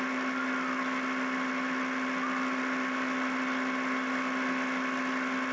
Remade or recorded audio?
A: recorded